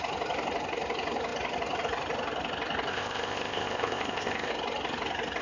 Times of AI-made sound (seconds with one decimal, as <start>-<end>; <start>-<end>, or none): 2.9-4.5